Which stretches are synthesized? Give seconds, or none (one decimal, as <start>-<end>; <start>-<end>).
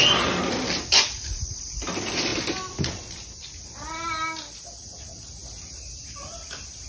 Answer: none